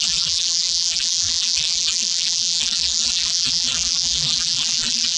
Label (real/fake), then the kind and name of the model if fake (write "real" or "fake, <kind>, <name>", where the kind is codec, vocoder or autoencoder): fake, vocoder, BigVGAN v2